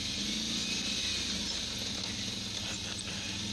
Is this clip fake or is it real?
real